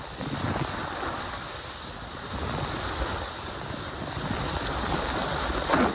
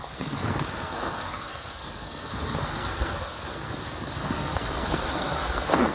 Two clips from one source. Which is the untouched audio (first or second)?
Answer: first